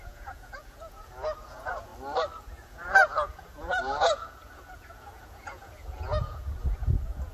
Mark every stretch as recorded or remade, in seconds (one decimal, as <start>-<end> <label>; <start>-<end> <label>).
0.0-1.9 remade; 1.9-2.4 recorded; 2.4-7.3 remade